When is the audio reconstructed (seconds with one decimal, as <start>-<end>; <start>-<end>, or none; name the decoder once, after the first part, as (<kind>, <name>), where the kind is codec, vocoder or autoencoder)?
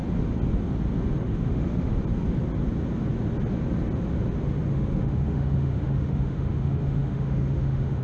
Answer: 1.2-1.9 (autoencoder, DAC-VAE); 4.7-8.0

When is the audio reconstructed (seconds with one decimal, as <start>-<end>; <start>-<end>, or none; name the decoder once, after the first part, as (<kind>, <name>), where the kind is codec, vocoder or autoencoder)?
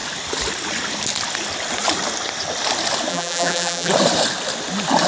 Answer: 3.1-3.9 (vocoder, BigVGAN v2)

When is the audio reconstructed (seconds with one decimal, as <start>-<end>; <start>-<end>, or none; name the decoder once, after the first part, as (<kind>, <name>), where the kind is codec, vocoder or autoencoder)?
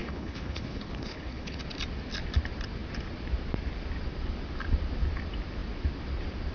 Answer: 0.0-1.6 (codec, HILCodec)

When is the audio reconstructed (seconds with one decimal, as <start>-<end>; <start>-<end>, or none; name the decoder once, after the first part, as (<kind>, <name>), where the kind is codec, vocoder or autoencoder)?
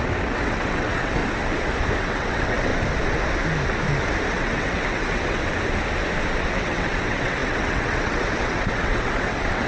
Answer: 0.0-1.2 (vocoder, WaveNeXt); 2.0-2.7; 4.3-5.4; 6.5-9.7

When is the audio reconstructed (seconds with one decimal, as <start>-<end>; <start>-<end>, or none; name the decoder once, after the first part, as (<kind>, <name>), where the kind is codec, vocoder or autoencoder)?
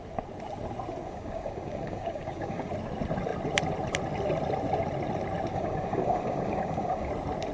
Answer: 1.0-2.7 (codec, DAC); 5.5-7.1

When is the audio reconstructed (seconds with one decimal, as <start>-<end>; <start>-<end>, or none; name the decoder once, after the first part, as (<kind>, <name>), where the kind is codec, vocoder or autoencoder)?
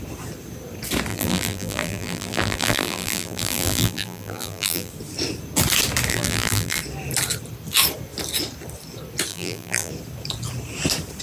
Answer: 1.1-4.9 (vocoder, BigVGAN v2); 6.1-6.8; 9.3-9.9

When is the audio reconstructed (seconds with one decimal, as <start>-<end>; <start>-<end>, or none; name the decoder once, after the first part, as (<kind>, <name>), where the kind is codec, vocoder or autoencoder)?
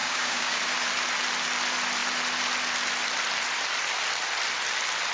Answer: 0.0-0.6 (codec, DAC)